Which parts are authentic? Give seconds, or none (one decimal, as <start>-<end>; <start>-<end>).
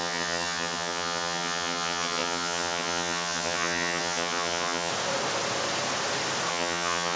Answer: 4.9-6.5